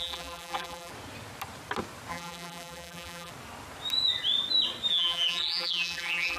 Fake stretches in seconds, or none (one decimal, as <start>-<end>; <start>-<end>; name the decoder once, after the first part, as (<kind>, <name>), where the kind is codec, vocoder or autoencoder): 0.0-0.9 (vocoder, BigVGAN v2); 2.1-3.3; 4.9-6.4

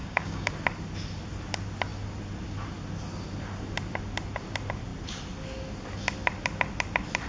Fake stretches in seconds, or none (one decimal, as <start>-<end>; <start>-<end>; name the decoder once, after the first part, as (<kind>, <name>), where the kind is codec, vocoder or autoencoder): 0.0-0.5 (codec, DAC)

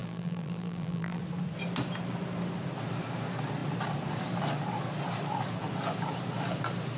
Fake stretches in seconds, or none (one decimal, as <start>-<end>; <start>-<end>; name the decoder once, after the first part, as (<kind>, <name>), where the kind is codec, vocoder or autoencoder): 0.0-1.2 (vocoder, BigVGAN v2)

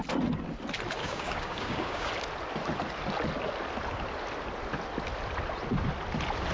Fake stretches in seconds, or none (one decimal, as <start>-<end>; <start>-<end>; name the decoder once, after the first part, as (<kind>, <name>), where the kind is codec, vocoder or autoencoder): 1.0-2.1 (codec, DAC)

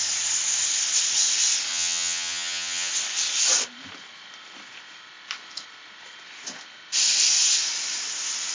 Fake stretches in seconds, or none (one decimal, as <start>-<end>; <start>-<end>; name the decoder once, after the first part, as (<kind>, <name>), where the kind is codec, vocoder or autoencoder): 1.7-2.9 (vocoder, HiFi-GAN)